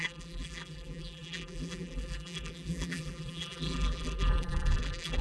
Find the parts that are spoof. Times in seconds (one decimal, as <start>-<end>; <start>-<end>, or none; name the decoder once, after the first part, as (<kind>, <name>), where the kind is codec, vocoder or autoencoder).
0.0-5.2 (vocoder, BigVGAN v2)